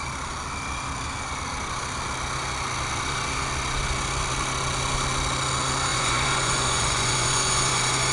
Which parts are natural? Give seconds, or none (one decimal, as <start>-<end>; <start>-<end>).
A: 0.0-5.9